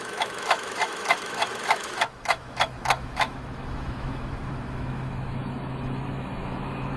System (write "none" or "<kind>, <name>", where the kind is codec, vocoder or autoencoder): autoencoder, DAC-VAE